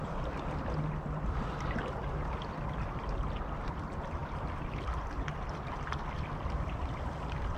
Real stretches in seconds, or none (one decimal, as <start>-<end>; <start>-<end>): 0.0-7.6